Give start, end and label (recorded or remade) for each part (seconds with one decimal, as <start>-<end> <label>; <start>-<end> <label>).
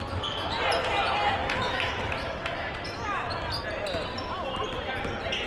0.0-1.4 recorded; 1.4-2.7 remade; 2.7-5.5 recorded